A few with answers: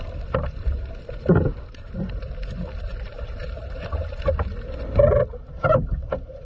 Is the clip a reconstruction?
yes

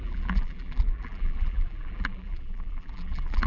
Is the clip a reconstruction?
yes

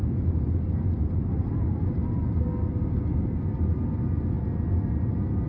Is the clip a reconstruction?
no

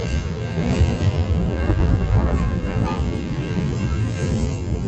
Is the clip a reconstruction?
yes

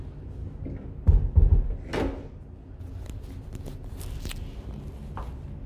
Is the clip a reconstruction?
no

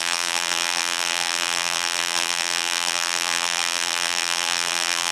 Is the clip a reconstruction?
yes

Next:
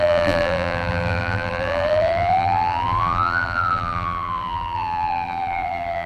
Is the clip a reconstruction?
yes